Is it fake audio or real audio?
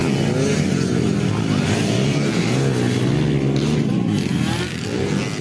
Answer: real